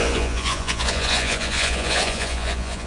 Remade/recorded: remade